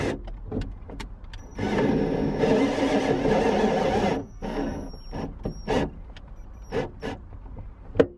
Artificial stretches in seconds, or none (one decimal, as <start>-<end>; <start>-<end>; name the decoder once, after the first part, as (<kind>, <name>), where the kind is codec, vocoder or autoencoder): 4.2-4.9 (codec, SNAC)